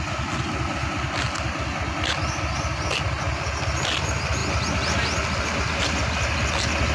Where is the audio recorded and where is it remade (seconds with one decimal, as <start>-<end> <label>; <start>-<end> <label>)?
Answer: 0.0-6.9 recorded